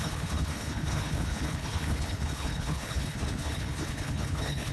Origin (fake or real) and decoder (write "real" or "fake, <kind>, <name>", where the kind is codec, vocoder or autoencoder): fake, codec, HILCodec